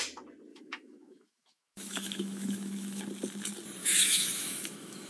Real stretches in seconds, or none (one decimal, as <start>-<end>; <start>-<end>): 0.0-0.5; 3.0-3.8